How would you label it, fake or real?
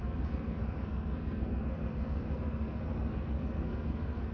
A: fake